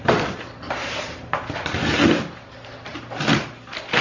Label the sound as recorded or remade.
recorded